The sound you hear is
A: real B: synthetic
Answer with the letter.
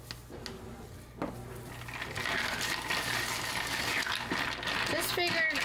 A